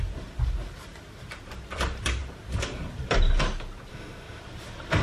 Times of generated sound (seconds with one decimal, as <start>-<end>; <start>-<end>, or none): 3.9-4.4